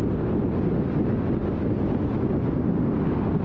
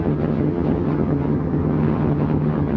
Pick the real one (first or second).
first